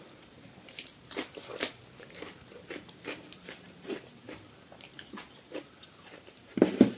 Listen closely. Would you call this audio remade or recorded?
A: remade